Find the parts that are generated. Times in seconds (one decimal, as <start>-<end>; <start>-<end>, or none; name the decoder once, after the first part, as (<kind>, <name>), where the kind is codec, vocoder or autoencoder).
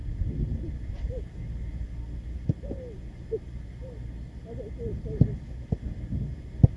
none